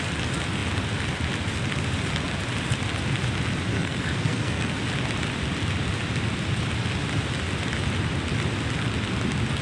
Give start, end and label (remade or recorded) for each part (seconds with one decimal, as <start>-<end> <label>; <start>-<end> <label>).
0.0-3.7 recorded; 3.7-4.8 remade; 4.8-9.6 recorded